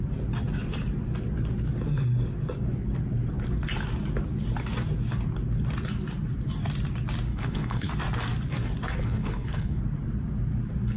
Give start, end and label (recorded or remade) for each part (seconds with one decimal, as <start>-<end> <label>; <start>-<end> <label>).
0.0-7.3 recorded; 7.3-7.9 remade; 7.9-9.0 recorded; 9.0-9.8 remade; 9.8-11.0 recorded